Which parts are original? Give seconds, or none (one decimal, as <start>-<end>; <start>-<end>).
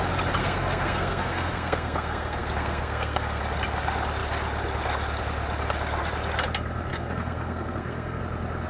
0.0-0.4; 3.4-6.9; 8.2-8.7